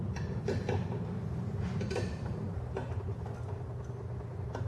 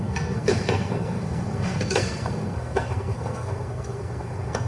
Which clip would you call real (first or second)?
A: first